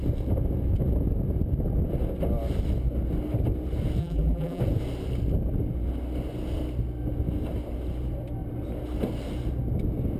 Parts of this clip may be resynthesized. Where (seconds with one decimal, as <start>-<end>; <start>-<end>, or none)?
4.0-4.6